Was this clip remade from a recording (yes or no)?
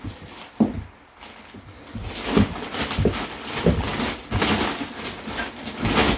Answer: no